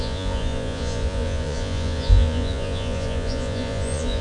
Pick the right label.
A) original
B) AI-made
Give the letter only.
B